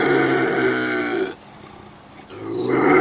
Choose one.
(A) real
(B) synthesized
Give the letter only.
A